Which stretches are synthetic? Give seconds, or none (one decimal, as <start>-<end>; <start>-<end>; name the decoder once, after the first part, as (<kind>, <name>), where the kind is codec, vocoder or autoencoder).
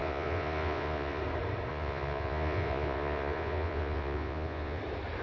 0.0-1.2 (vocoder, Vocos); 1.7-4.8